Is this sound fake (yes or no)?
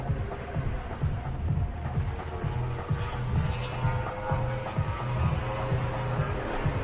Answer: no